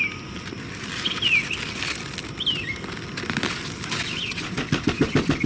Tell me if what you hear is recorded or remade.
recorded